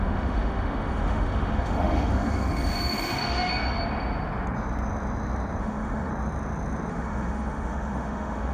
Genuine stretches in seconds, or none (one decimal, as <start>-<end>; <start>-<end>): 3.5-5.6; 6.1-6.9